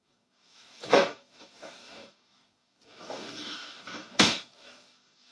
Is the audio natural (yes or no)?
no